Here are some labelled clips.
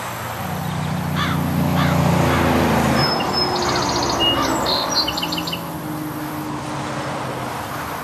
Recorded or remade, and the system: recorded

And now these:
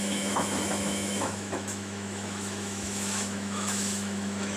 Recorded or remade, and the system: remade, autoencoder, DAC-VAE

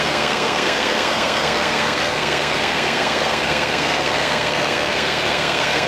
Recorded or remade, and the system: remade, codec, SNAC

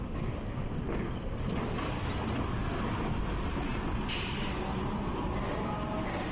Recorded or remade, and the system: recorded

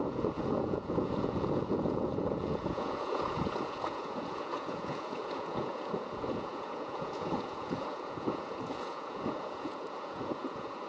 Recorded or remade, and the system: remade, vocoder, Vocos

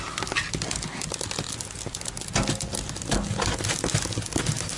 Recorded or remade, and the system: recorded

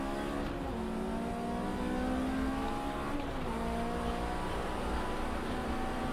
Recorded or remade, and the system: recorded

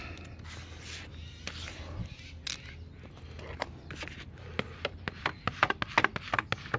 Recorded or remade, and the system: recorded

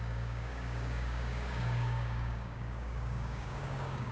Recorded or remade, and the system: remade, codec, DAC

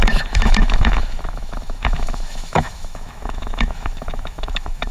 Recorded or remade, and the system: remade, autoencoder, DAC-VAE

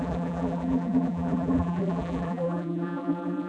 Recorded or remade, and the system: remade, vocoder, BigVGAN v2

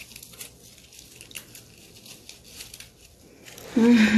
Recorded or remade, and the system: recorded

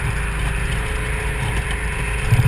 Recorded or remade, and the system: recorded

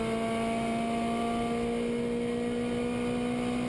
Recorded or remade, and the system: recorded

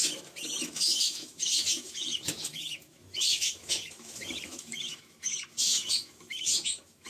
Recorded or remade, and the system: remade, autoencoder, DAC-VAE